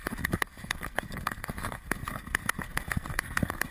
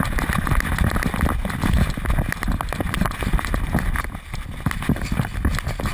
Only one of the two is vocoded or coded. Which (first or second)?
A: first